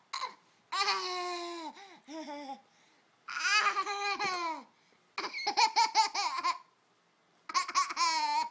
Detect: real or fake real